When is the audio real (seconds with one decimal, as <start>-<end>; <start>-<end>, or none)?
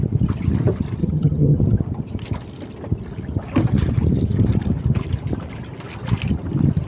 0.0-1.0; 1.6-6.9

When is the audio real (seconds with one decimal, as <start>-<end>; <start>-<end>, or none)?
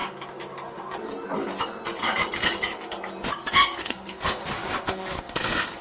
0.0-3.5; 4.4-4.9